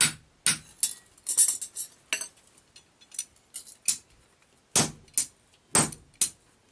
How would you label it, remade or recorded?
recorded